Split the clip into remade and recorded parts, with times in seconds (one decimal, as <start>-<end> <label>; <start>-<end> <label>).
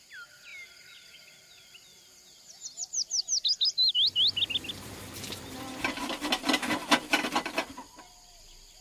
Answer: 0.0-8.8 recorded